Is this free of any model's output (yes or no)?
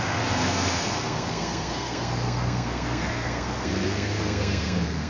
no